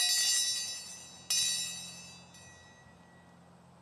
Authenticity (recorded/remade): recorded